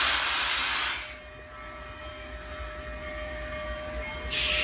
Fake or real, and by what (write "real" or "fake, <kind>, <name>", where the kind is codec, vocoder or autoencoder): real